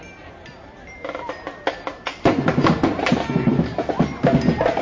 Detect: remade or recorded recorded